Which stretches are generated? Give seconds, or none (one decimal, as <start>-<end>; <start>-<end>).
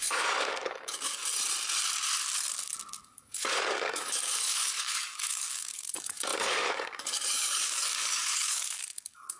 0.0-1.2; 3.0-9.4